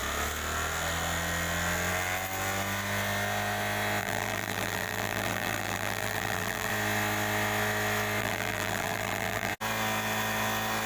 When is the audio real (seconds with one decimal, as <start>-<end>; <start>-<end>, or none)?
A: 0.0-4.0; 6.7-8.2; 9.5-10.9